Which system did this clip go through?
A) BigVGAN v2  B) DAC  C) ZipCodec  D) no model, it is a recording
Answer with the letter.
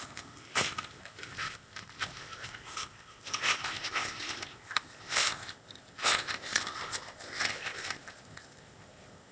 C